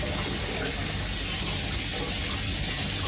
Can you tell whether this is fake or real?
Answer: real